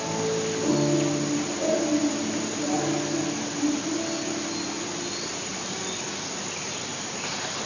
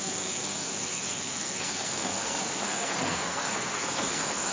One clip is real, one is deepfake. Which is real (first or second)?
first